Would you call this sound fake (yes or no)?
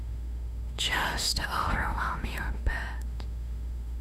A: yes